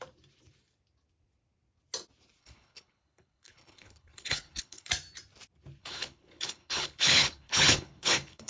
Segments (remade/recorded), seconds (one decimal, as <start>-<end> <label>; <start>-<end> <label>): 0.0-2.4 recorded; 2.4-4.9 remade; 4.9-5.8 recorded; 5.8-8.5 remade